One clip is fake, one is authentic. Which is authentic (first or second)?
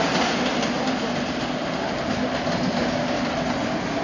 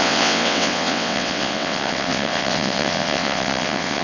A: first